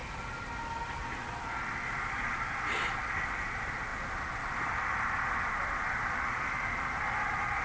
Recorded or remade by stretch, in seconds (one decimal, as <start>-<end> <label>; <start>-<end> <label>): 0.0-7.6 recorded